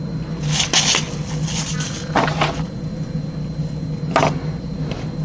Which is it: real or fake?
real